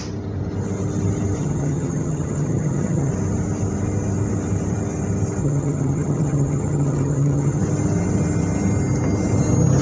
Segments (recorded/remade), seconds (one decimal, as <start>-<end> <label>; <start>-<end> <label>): 0.0-1.4 recorded; 1.4-3.1 remade; 3.1-5.4 recorded; 5.4-7.6 remade; 7.6-9.8 recorded